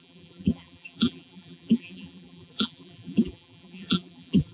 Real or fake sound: fake